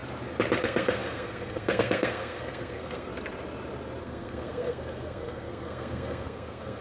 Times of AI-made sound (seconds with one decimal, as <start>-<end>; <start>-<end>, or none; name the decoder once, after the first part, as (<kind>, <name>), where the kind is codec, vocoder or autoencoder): 0.6-3.1 (codec, SNAC); 4.0-6.8